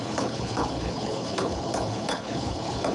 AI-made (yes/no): yes